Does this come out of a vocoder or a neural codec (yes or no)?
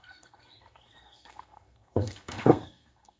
yes